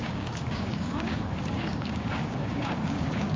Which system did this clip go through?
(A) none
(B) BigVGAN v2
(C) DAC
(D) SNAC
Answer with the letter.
C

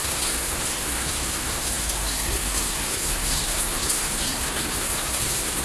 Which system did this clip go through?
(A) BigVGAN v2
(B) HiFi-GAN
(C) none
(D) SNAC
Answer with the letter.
D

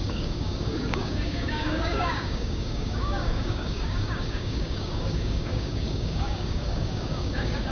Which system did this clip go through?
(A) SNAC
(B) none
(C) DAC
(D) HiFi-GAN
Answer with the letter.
C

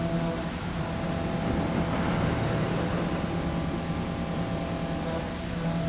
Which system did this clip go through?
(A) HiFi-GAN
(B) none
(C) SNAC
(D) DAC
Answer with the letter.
B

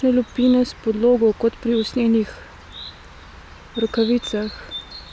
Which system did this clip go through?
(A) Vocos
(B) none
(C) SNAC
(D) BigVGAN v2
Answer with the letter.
B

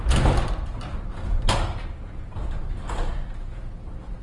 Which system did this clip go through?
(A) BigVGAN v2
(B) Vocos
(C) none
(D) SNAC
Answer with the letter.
C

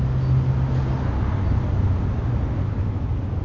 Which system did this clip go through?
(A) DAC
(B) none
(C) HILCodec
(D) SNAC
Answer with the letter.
B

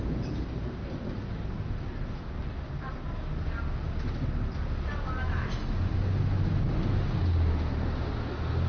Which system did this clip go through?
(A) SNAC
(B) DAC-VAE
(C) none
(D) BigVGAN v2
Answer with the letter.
C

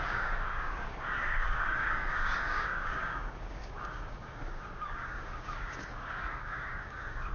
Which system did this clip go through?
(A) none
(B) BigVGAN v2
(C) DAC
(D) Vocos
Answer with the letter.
C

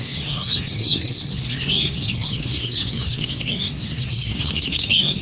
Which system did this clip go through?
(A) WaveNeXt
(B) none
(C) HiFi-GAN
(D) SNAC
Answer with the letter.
D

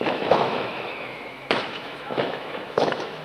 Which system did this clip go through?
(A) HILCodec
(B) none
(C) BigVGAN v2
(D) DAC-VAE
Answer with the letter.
D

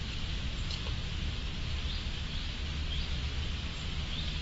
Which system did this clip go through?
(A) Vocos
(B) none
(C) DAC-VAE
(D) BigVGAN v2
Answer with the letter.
B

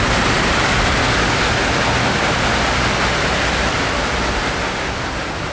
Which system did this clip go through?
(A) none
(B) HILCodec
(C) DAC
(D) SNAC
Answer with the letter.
A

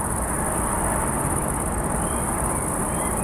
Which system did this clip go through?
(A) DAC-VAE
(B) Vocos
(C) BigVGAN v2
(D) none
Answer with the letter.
C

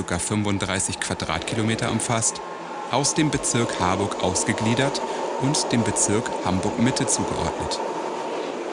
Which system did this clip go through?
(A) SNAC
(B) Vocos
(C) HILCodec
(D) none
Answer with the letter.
D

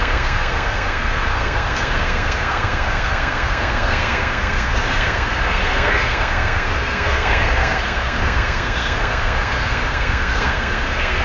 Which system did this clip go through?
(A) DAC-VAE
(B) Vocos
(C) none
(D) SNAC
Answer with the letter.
D